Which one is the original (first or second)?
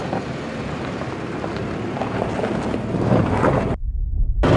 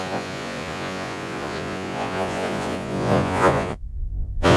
first